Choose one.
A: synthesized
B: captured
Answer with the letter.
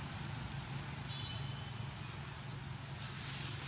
B